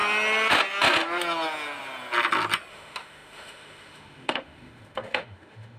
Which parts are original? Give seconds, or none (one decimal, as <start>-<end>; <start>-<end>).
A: 0.0-2.7

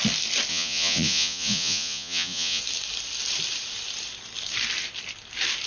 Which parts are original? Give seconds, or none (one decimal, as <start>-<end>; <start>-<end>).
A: 0.0-0.5; 2.6-5.7

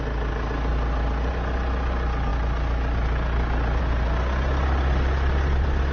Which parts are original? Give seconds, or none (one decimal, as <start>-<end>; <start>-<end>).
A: 0.0-5.9

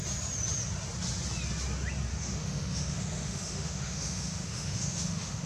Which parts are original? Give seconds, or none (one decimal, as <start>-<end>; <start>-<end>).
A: 0.0-2.1

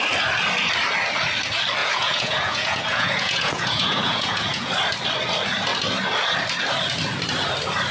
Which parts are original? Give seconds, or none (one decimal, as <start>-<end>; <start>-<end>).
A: 0.0-1.8; 4.7-7.9

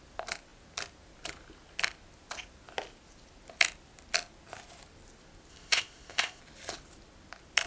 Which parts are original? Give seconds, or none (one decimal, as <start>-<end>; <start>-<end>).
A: 0.0-5.5; 6.4-7.7

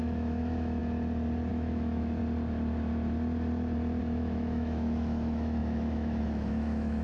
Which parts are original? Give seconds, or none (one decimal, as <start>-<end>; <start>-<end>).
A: 0.8-1.5; 2.2-4.0